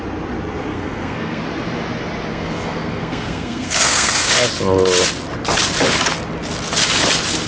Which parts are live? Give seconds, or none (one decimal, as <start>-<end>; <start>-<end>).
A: 0.0-0.7; 1.4-2.3; 4.3-7.5